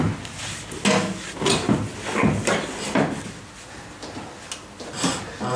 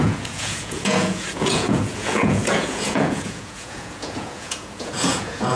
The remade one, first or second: second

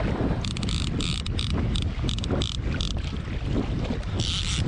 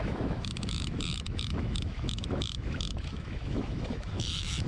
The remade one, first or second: second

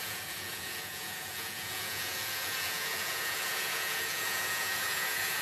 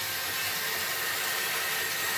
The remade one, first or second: first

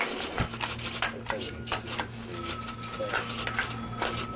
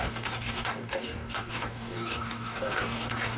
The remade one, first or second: second